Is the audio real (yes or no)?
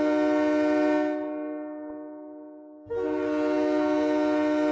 yes